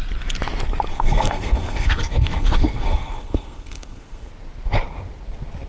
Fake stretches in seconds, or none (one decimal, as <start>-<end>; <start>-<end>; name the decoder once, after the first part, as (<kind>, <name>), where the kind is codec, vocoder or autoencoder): 0.9-4.3 (codec, SNAC)